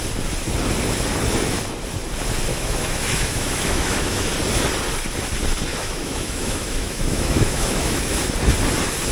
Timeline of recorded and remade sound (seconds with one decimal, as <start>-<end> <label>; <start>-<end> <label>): 0.0-2.5 recorded; 2.5-4.3 remade; 4.3-5.7 recorded; 5.7-8.2 remade; 8.2-9.1 recorded